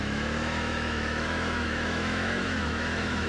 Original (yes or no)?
no